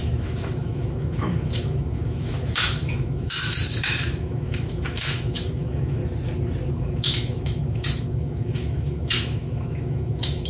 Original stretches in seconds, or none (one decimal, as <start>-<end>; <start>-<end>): 6.0-6.7